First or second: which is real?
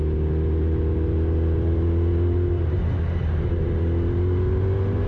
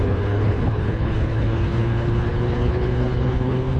first